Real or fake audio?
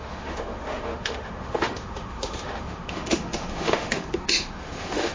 fake